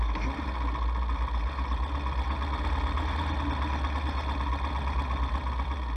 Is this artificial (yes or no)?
no